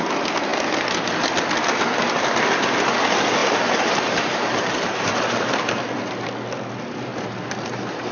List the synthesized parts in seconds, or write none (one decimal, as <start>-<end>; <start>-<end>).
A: 3.4-6.0; 7.1-8.1